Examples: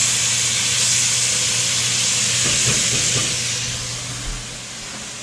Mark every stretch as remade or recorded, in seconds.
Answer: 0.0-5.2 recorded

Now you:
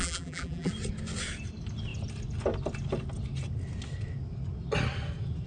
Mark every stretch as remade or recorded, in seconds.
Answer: 0.0-0.7 remade; 0.7-5.5 recorded

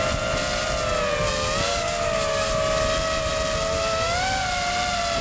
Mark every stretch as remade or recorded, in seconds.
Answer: 0.0-1.7 recorded; 1.7-2.5 remade; 2.5-5.2 recorded

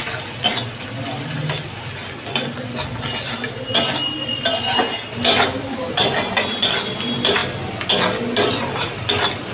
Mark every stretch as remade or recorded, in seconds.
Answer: 0.0-9.5 recorded

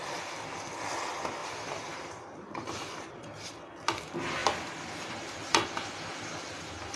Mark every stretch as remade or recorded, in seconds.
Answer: 0.0-1.4 recorded; 1.4-3.1 remade; 3.1-7.0 recorded

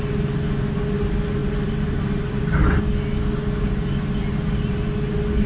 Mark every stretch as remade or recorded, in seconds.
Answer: 0.0-1.4 recorded; 1.4-2.8 remade; 2.8-5.5 recorded

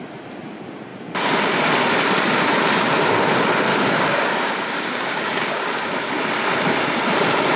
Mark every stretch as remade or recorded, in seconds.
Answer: 0.0-3.7 recorded; 3.7-5.9 remade; 5.9-7.6 recorded

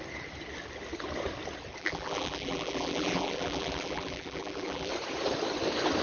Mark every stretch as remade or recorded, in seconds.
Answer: 0.0-1.8 recorded; 1.8-4.9 remade; 4.9-6.0 recorded